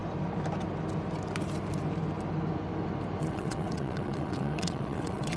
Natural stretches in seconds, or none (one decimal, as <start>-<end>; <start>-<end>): 0.0-3.2